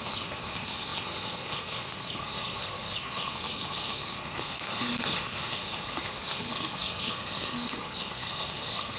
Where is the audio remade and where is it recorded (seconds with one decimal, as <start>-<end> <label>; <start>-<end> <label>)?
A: 0.0-9.0 remade

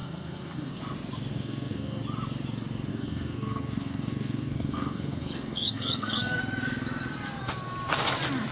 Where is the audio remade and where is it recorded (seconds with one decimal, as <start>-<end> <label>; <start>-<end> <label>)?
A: 0.0-0.8 remade; 0.8-1.3 recorded; 1.3-2.0 remade; 2.0-2.9 recorded; 2.9-6.4 remade; 6.4-8.5 recorded

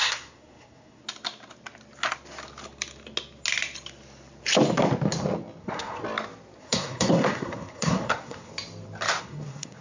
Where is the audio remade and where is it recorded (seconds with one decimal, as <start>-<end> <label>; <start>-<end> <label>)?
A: 0.0-1.0 remade; 1.0-5.6 recorded; 5.6-6.0 remade; 6.0-6.6 recorded; 6.6-8.5 remade; 8.5-9.2 recorded; 9.2-9.8 remade

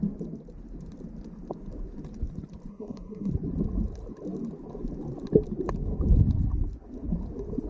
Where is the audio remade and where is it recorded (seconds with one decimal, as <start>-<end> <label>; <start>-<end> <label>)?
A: 0.0-2.7 recorded; 2.7-3.3 remade; 3.3-7.7 recorded

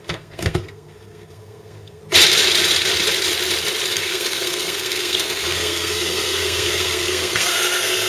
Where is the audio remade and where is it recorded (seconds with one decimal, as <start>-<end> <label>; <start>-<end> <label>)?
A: 0.0-2.0 remade; 2.0-3.9 recorded; 3.9-8.1 remade

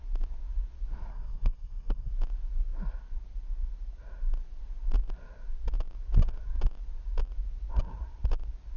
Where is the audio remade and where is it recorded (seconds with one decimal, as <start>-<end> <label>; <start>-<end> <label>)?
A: 0.0-1.1 recorded; 1.1-2.1 remade; 2.1-8.8 recorded

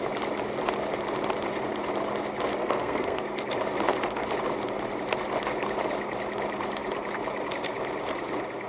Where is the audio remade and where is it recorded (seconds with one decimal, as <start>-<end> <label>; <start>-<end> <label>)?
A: 0.0-2.6 recorded; 2.6-3.2 remade; 3.2-8.7 recorded